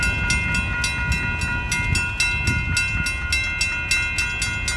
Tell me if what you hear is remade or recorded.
recorded